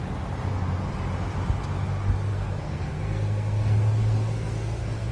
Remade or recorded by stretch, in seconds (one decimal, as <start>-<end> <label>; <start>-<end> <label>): 0.0-2.3 recorded; 2.3-5.1 remade